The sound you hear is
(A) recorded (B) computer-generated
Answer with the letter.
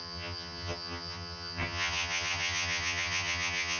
B